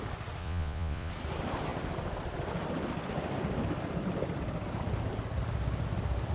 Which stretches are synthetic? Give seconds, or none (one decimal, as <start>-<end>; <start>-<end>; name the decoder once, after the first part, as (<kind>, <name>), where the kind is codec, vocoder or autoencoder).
0.4-1.1 (vocoder, Vocos)